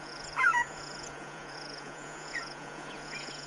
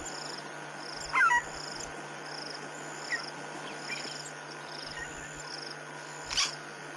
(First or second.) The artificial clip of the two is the first